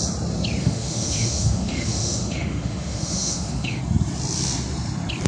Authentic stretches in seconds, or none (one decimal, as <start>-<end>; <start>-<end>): 0.0-0.6; 3.8-5.3